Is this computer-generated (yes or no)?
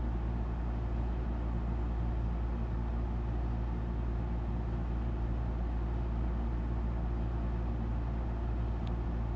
no